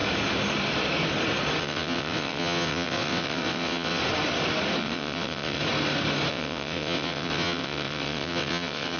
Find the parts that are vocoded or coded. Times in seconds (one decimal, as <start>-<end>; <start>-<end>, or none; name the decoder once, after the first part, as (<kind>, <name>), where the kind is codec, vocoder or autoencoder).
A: 1.6-4.0 (vocoder, WaveNeXt); 4.8-5.6; 6.3-9.0

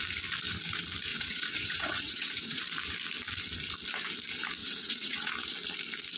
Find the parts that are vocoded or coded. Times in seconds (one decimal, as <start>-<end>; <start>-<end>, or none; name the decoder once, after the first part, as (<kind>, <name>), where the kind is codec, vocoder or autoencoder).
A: 1.1-2.6 (vocoder, WaveNeXt); 4.6-5.3

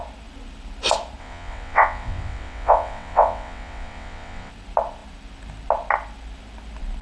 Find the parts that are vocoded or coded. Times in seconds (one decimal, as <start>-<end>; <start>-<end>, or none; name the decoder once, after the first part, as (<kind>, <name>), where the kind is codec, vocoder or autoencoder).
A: 1.2-4.5 (vocoder, WaveNeXt)

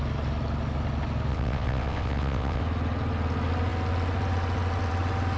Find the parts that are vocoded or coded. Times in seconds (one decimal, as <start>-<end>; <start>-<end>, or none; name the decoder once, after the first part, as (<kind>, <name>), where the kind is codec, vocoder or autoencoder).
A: 1.3-2.6 (vocoder, WaveNeXt)

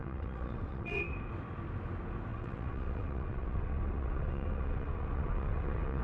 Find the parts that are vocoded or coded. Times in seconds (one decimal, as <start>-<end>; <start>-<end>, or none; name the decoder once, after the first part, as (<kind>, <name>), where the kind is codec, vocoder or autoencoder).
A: 0.0-1.0 (vocoder, WaveNeXt); 2.3-6.0